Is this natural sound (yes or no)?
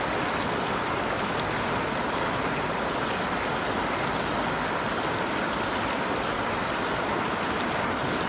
yes